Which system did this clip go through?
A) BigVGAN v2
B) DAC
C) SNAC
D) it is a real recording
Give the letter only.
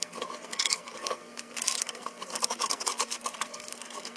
C